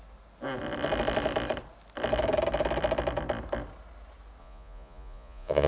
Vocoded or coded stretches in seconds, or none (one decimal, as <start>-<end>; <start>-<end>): 4.4-5.7